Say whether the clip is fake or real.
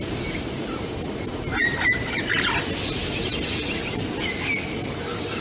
real